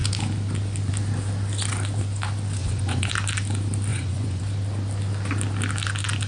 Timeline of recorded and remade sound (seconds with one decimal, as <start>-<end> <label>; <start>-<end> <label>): 0.0-2.6 recorded; 2.6-3.1 remade; 3.1-3.9 recorded; 3.9-4.4 remade; 4.4-6.3 recorded

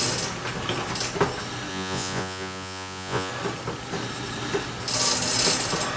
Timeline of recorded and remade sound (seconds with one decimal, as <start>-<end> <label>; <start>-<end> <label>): 0.0-1.7 recorded; 1.7-3.3 remade; 3.3-6.0 recorded

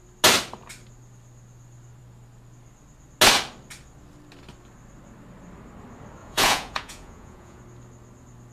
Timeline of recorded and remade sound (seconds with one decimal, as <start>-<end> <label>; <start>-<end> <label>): 0.0-6.2 recorded; 6.2-7.6 remade; 7.6-8.5 recorded

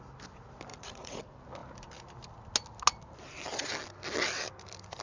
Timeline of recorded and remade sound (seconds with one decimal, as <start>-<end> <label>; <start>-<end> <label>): 0.0-0.7 recorded; 0.7-1.2 remade; 1.2-5.0 recorded

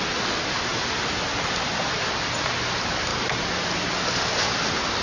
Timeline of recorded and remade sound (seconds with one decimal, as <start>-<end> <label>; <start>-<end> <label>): 0.0-5.0 recorded

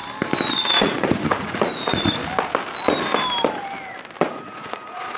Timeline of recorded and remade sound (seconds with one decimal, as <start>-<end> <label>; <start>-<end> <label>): 0.0-0.5 recorded; 0.5-2.2 remade; 2.2-4.3 recorded; 4.3-5.2 remade